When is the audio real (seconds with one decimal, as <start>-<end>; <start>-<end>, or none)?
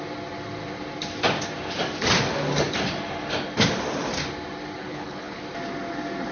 0.0-4.8; 5.4-6.3